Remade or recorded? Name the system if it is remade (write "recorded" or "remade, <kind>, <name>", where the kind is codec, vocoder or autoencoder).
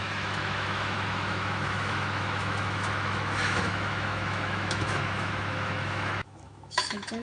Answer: remade, autoencoder, DAC-VAE